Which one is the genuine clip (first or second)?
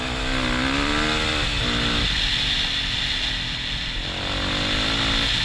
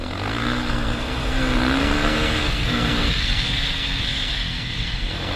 first